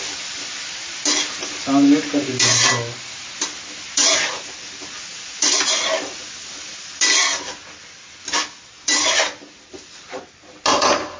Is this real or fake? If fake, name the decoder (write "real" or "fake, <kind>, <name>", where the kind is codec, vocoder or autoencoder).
real